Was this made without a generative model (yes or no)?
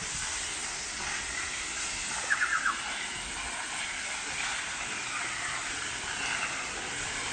yes